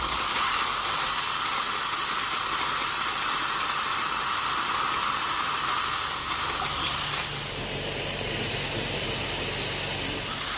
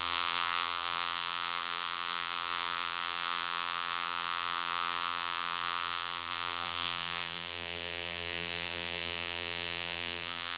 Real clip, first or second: first